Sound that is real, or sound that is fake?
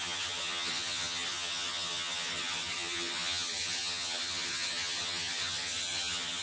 fake